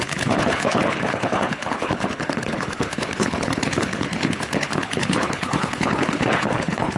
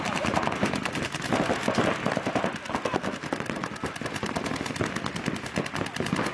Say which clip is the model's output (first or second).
first